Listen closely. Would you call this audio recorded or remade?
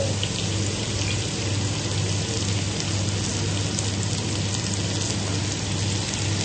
recorded